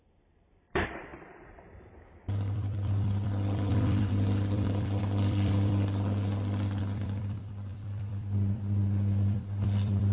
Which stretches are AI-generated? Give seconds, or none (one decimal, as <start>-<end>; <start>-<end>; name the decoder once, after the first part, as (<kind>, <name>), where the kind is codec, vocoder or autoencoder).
0.0-5.7 (vocoder, BigVGAN v2); 6.8-10.1

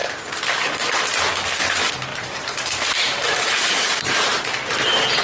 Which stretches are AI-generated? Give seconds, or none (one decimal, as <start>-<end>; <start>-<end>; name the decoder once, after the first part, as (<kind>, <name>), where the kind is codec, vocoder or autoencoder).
0.0-1.3 (vocoder, BigVGAN v2); 2.1-4.4

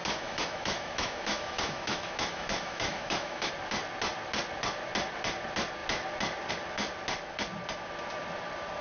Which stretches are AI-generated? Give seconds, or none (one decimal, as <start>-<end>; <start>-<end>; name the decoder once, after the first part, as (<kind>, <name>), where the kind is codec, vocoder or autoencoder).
0.0-3.5 (autoencoder, DAC-VAE)

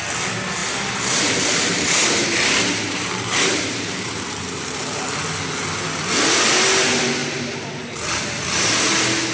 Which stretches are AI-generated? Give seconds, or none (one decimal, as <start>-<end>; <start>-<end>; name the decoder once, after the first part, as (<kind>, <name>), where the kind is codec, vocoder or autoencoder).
0.6-5.0 (vocoder, BigVGAN v2); 7.2-8.2